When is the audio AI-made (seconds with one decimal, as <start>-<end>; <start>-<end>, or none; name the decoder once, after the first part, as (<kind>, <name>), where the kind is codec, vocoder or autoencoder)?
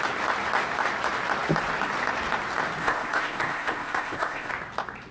2.8-4.5 (codec, ZipCodec)